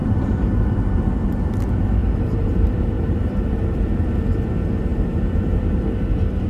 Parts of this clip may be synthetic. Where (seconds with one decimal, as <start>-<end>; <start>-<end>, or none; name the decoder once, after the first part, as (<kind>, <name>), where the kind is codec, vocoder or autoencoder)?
0.0-0.6 (vocoder, BigVGAN v2); 2.0-3.2; 4.9-5.8